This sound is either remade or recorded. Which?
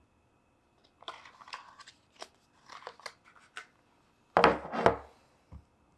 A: recorded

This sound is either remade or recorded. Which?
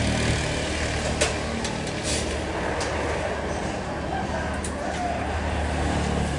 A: recorded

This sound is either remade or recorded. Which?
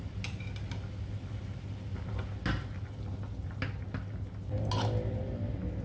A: recorded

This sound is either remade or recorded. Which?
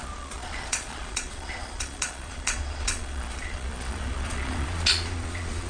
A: remade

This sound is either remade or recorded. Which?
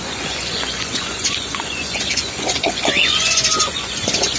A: remade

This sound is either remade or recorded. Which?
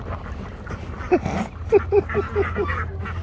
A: recorded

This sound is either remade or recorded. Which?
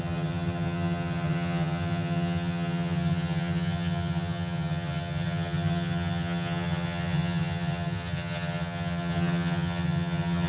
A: remade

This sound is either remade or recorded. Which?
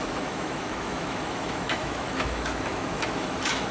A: remade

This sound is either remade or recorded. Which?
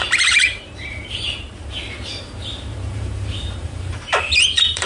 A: remade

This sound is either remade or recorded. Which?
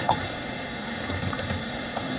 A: remade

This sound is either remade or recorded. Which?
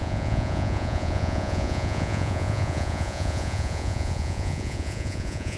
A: remade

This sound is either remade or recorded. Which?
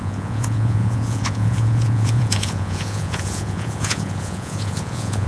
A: remade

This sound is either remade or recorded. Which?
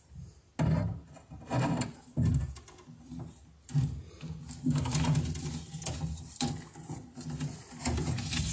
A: recorded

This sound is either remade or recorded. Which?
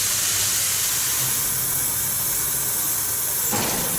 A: recorded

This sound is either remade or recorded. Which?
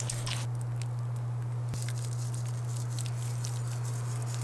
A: recorded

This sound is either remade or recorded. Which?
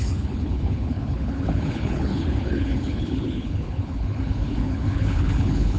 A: remade